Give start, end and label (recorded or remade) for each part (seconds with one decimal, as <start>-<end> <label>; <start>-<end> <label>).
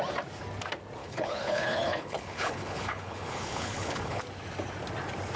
0.0-1.0 recorded; 1.0-4.2 remade; 4.2-5.4 recorded